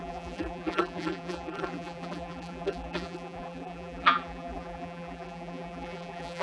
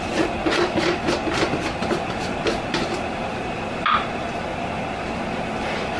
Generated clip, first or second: first